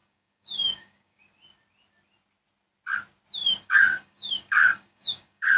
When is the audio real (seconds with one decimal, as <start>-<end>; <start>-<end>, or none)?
1.2-3.4